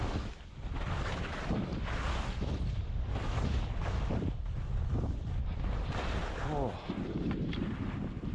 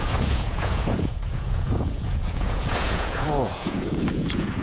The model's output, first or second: second